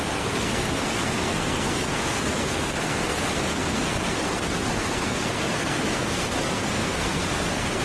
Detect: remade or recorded remade